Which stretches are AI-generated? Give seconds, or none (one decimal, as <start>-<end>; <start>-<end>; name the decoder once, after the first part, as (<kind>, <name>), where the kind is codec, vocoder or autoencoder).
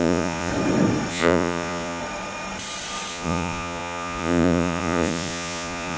0.0-0.5 (vocoder, Vocos); 1.1-2.0; 3.1-6.0